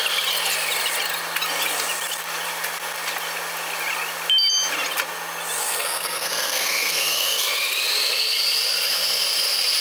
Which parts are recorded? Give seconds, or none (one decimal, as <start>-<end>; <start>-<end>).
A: 0.0-5.6; 7.5-9.8